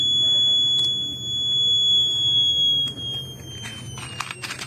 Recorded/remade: recorded